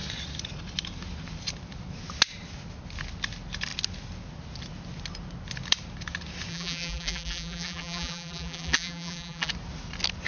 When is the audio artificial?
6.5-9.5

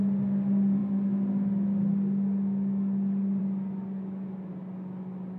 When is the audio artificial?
none